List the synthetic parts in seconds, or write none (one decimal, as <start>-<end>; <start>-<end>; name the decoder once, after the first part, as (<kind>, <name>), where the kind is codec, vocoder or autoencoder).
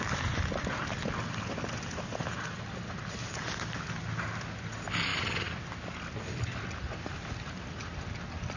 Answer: none